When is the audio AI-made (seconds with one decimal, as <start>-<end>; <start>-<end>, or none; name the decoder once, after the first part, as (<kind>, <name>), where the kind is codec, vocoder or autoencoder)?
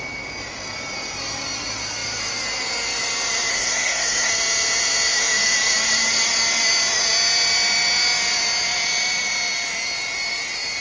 3.5-4.3 (codec, SNAC)